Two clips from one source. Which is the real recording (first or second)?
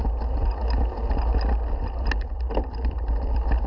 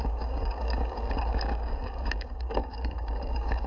first